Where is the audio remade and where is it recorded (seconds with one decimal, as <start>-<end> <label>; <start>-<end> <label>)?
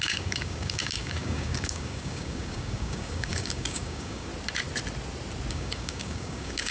0.0-4.3 remade; 4.3-5.5 recorded; 5.5-6.7 remade